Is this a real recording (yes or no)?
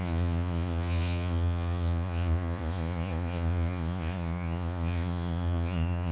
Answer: no